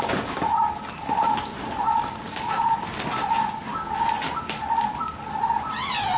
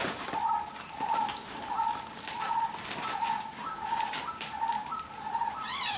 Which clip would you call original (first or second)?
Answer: first